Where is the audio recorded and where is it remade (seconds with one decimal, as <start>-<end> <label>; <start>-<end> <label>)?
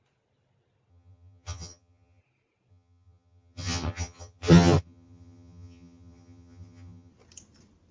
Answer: 0.0-0.9 recorded; 0.9-2.2 remade; 2.2-2.7 recorded; 2.7-7.1 remade; 7.1-7.9 recorded